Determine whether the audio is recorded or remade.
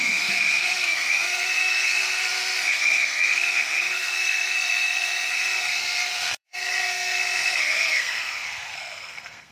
remade